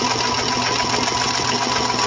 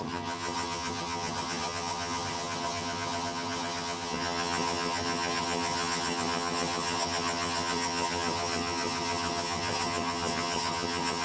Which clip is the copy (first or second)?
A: second